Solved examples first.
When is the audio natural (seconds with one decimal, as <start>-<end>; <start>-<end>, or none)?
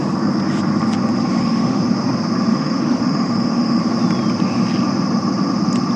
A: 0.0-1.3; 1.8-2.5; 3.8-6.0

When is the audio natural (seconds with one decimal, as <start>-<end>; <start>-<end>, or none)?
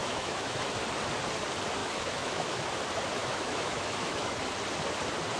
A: 0.8-1.8; 2.6-3.2; 4.3-5.4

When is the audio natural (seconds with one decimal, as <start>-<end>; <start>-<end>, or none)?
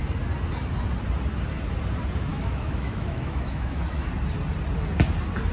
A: 0.0-2.3; 4.1-5.5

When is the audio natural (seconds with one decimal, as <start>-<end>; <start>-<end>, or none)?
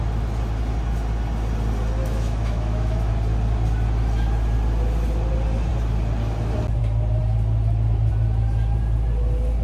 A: 0.0-2.0; 3.1-9.6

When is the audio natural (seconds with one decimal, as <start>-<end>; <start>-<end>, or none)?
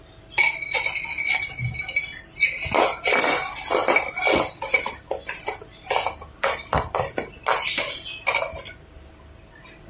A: 0.0-9.9